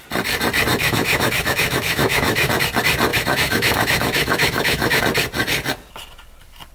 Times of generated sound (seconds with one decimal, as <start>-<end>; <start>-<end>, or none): 0.7-2.5; 3.1-5.0